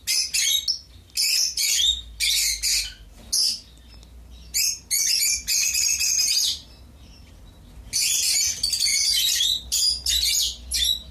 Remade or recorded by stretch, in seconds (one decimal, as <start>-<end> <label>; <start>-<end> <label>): 0.0-8.9 recorded; 8.9-10.1 remade; 10.1-11.1 recorded